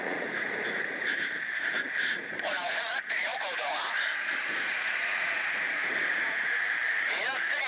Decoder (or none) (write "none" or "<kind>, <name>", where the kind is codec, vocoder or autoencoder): vocoder, Vocos